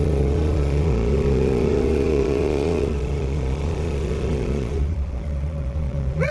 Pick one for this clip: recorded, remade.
remade